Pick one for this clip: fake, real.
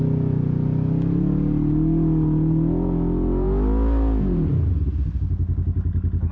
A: real